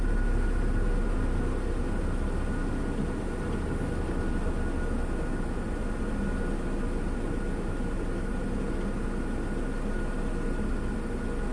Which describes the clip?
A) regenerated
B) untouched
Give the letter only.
B